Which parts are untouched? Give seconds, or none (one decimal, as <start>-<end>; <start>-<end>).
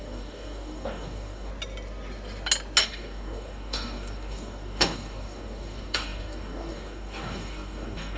1.5-2.8